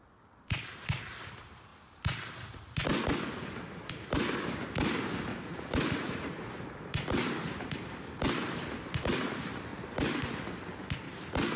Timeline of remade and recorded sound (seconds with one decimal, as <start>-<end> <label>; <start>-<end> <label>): 0.0-5.3 recorded; 5.3-6.4 remade; 6.4-11.6 recorded